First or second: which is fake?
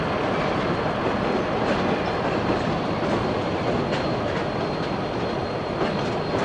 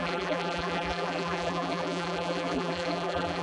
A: second